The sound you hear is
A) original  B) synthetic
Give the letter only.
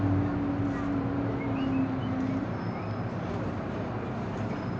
A